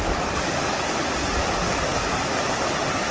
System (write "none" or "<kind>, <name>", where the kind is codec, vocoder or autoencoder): none